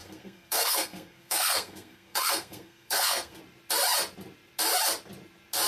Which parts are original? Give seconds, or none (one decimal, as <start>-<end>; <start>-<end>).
3.4-5.7